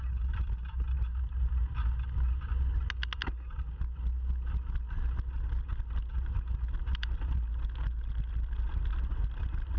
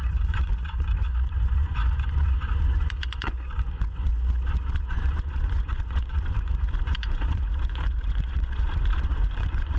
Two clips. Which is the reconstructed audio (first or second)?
second